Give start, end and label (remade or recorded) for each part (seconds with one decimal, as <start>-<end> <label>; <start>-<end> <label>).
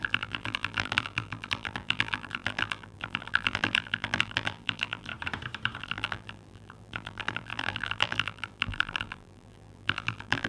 0.0-5.1 remade; 5.1-5.8 recorded; 5.8-10.5 remade